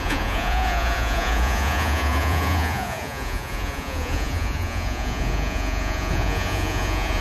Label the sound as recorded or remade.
remade